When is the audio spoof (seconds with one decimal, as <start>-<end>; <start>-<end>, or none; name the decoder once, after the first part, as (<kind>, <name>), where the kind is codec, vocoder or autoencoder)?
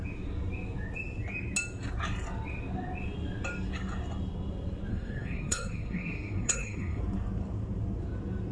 4.9-7.0 (codec, SNAC)